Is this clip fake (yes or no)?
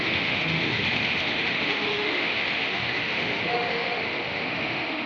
yes